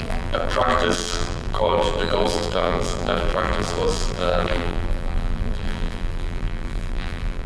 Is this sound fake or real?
fake